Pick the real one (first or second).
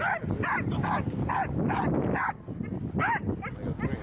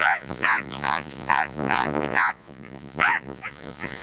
first